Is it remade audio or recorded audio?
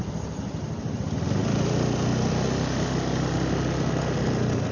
recorded